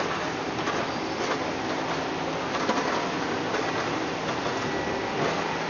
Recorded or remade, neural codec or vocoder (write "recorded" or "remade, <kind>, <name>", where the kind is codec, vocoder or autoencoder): recorded